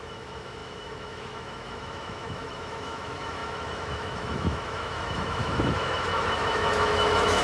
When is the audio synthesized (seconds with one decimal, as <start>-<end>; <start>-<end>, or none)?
0.0-7.4